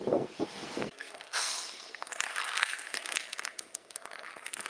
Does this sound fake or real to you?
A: fake